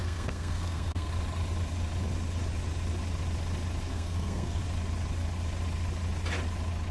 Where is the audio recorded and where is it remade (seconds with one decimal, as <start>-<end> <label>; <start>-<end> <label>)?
0.0-1.1 remade; 1.1-3.9 recorded; 3.9-4.6 remade; 4.6-6.9 recorded